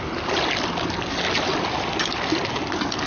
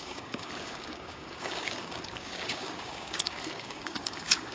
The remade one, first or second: second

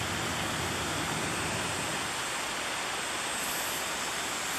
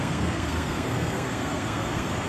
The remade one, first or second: second